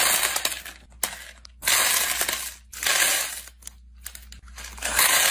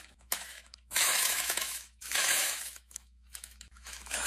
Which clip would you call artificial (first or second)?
second